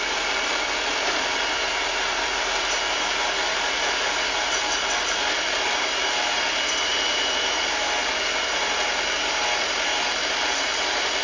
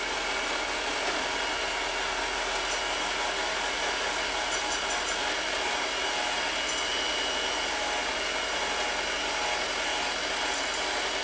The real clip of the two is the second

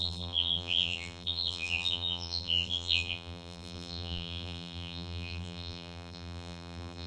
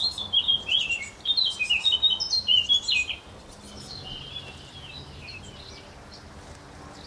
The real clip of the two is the second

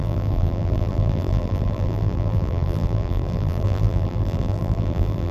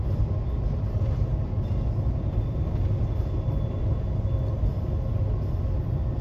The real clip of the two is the second